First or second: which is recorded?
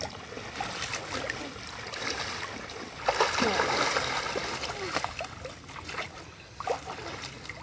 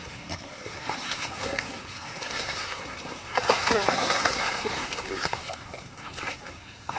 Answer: first